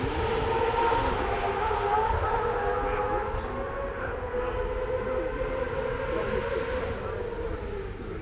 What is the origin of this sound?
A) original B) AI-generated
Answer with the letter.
A